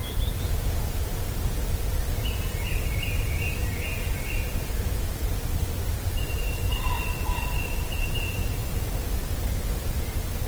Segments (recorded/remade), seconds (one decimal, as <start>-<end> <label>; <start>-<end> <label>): 0.0-8.6 remade; 8.6-9.2 recorded; 9.2-10.5 remade